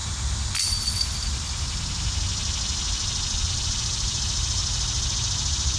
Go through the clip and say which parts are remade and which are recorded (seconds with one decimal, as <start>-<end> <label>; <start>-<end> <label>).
0.0-3.5 recorded; 3.5-4.6 remade; 4.6-5.8 recorded